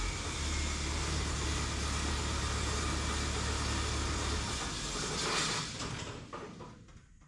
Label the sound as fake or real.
real